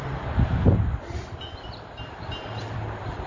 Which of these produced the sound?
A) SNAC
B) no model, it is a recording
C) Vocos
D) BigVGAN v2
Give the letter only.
D